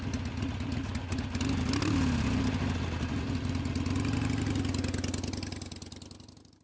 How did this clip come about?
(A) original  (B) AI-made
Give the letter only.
A